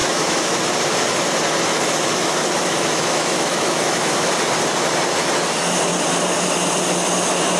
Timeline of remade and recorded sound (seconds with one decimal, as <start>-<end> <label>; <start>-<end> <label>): 0.0-0.6 remade; 0.6-1.7 recorded; 1.7-4.3 remade; 4.3-7.6 recorded